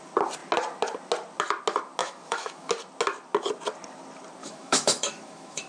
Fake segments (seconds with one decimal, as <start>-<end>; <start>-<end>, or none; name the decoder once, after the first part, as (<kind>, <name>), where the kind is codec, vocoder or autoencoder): 2.0-2.7 (autoencoder, DAC-VAE); 4.4-5.7